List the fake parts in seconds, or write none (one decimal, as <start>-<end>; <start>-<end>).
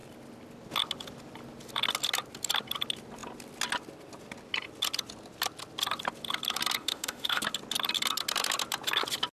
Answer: 6.8-7.4